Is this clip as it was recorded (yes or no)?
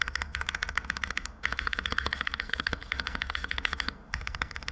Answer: no